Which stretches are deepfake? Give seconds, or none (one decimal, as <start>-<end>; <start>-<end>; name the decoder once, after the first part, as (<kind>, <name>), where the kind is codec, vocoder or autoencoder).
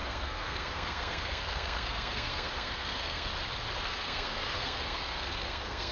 0.0-3.3 (codec, SNAC); 3.8-5.9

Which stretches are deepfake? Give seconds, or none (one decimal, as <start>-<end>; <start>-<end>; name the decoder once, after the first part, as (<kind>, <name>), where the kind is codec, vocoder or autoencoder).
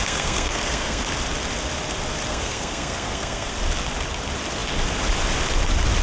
0.0-1.0 (codec, SNAC); 2.3-3.6